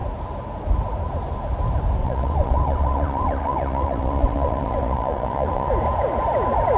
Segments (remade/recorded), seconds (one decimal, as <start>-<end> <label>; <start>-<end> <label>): 0.0-2.0 recorded; 2.0-5.7 remade; 5.7-6.8 recorded